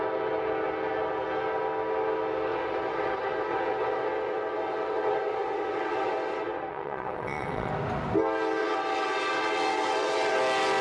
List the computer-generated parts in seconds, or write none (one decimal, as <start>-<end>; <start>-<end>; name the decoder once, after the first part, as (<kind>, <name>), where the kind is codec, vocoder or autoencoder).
2.5-7.7 (vocoder, WaveNeXt); 8.6-10.4